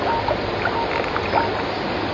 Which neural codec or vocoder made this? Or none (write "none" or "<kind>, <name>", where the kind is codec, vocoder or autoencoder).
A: none